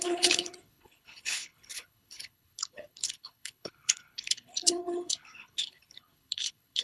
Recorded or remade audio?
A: remade